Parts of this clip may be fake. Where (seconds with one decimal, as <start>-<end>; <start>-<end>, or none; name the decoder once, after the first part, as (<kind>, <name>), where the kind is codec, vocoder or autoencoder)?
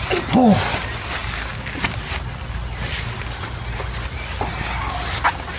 none